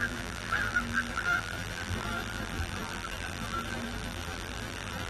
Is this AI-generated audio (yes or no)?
yes